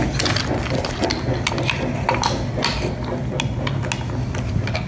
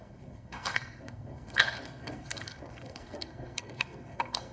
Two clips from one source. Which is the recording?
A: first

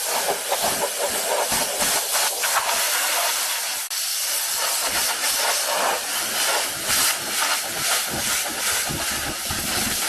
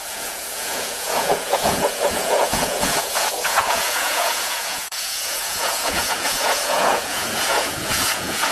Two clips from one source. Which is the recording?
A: first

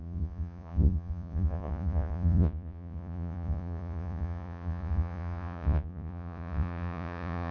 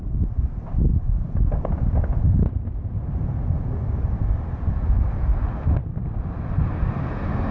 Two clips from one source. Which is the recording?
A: second